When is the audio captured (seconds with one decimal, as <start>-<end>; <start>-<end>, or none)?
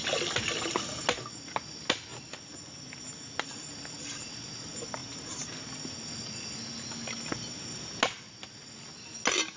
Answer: 0.0-9.6